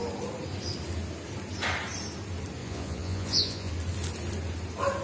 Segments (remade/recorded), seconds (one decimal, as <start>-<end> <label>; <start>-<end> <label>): 0.0-2.6 recorded; 2.6-3.7 remade; 3.7-5.0 recorded